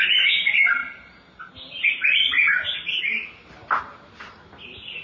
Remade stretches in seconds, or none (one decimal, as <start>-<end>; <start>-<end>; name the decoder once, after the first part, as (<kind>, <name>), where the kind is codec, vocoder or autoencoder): none